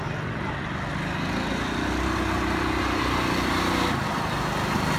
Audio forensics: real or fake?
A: real